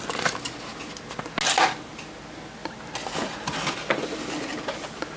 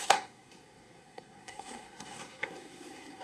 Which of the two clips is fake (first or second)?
second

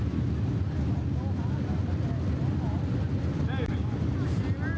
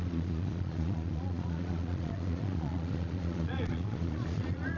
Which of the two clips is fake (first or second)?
second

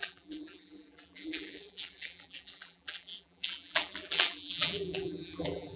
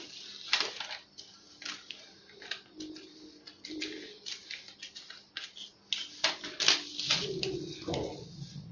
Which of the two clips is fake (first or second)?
first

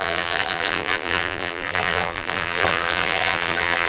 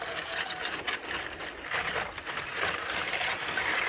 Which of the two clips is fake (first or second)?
first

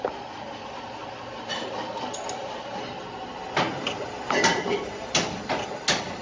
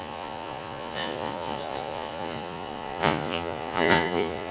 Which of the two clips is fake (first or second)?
second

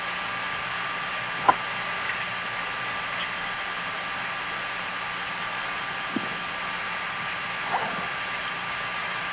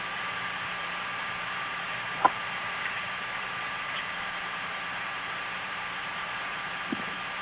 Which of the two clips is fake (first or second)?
second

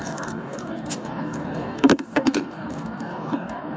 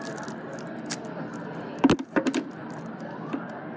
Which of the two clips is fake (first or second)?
first